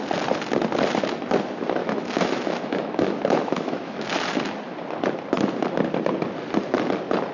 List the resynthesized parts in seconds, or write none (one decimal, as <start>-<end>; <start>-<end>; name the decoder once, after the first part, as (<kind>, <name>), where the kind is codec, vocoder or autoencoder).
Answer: 1.8-4.1 (autoencoder, DAC-VAE)